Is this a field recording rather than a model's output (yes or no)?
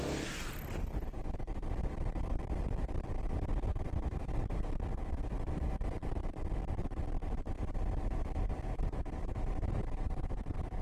yes